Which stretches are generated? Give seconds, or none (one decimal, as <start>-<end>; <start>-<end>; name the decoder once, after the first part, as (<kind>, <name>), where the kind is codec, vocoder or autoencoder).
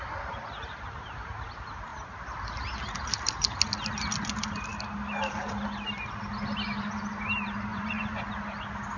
7.7-8.2 (vocoder, Vocos)